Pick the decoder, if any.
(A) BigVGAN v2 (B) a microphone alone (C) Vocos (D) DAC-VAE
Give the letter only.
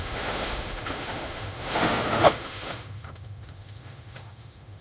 D